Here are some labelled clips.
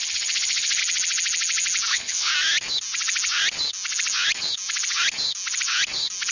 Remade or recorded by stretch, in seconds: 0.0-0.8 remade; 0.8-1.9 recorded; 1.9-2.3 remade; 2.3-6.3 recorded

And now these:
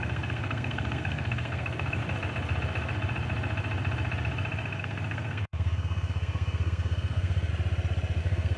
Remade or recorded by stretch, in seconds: 0.0-2.0 remade; 2.0-4.8 recorded; 4.8-7.5 remade; 7.5-8.2 recorded; 8.2-8.6 remade

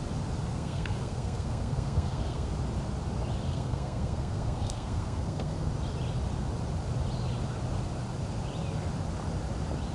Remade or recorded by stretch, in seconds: 0.0-0.5 recorded; 0.5-2.5 remade; 2.5-3.5 recorded; 3.5-5.7 remade; 5.7-9.9 recorded